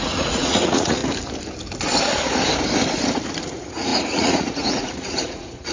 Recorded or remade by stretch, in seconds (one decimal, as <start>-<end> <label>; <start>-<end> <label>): 0.0-1.0 remade; 1.0-3.4 recorded; 3.4-5.7 remade